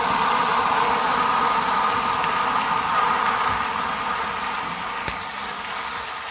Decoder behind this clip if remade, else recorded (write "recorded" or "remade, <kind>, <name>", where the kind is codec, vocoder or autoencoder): recorded